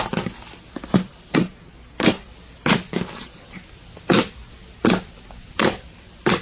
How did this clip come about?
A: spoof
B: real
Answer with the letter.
B